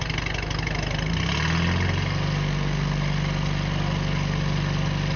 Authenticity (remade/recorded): recorded